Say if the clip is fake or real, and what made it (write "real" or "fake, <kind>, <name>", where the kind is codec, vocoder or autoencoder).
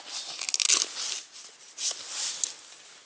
real